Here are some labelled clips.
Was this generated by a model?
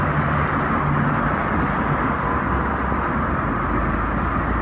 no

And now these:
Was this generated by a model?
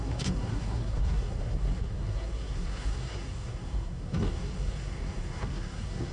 yes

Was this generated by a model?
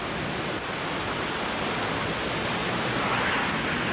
no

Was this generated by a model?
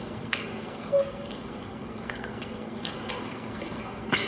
yes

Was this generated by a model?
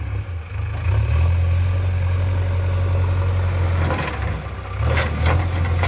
no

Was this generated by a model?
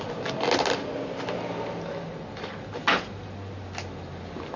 no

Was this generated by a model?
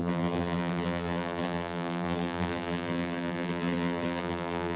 yes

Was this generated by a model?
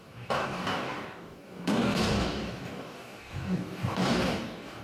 yes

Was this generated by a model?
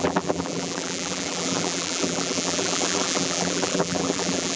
yes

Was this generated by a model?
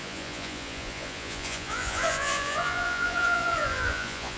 yes